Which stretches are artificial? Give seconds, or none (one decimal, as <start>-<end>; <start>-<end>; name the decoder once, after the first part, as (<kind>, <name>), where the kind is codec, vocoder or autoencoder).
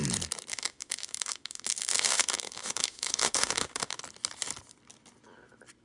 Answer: 0.5-4.0 (autoencoder, DAC-VAE)